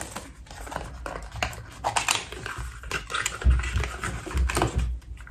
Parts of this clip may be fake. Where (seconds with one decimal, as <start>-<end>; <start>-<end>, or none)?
none